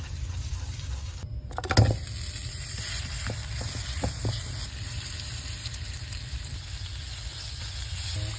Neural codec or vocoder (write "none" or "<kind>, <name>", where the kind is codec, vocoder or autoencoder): none